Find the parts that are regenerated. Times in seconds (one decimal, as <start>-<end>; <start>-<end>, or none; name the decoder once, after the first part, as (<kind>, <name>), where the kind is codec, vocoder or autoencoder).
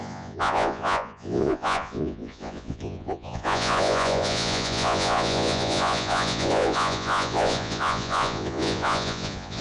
0.0-9.6 (vocoder, Vocos)